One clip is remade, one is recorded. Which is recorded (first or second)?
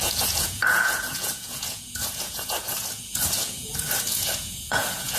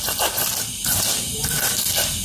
second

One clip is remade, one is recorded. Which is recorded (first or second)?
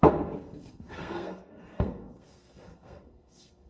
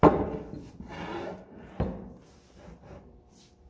second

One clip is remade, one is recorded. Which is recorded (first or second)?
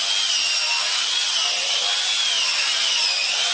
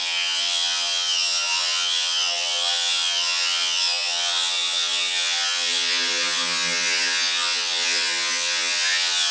first